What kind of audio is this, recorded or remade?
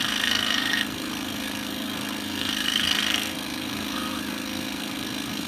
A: remade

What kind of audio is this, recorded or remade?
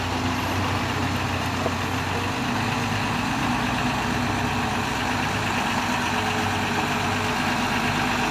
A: recorded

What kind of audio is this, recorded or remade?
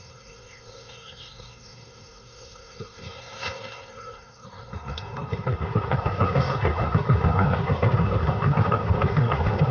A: remade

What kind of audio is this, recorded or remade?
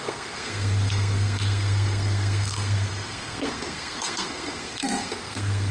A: remade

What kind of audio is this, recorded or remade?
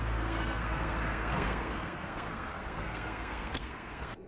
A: remade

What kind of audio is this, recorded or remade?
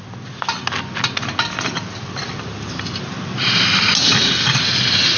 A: recorded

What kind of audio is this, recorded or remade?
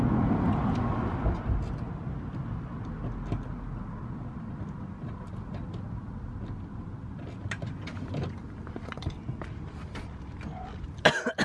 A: recorded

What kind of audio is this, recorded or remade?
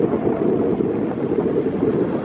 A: recorded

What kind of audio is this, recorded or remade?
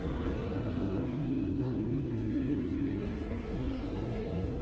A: remade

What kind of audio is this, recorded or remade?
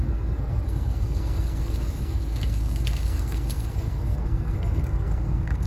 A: remade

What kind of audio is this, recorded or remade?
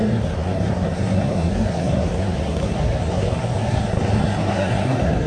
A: remade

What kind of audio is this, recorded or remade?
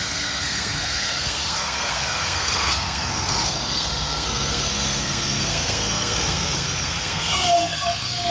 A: remade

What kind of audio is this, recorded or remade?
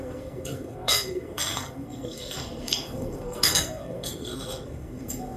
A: remade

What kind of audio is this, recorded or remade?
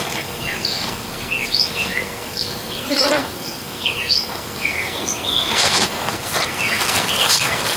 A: remade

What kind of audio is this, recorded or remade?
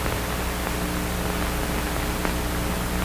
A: recorded